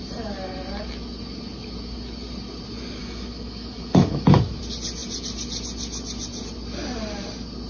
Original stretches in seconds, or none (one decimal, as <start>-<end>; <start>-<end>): 0.0-3.0; 4.6-7.7